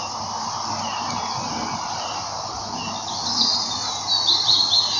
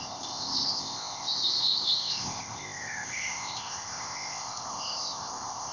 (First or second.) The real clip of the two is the first